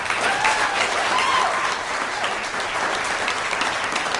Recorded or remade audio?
recorded